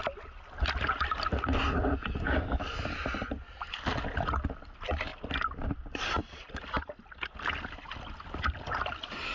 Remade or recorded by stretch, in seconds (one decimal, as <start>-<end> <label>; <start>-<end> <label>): 0.0-9.3 recorded